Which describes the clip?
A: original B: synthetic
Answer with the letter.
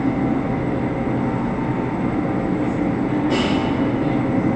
A